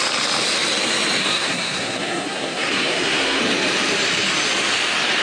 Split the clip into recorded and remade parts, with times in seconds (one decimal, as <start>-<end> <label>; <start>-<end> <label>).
0.0-1.2 recorded; 1.2-3.4 remade; 3.4-5.2 recorded